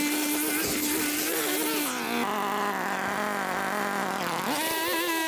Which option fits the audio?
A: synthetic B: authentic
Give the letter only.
B